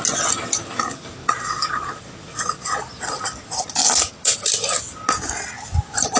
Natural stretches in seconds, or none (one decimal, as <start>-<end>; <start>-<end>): 0.0-1.2; 3.2-6.2